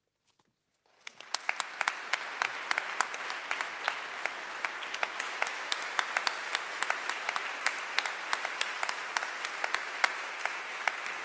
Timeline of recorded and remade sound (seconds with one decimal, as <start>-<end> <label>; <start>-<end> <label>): 0.0-11.2 recorded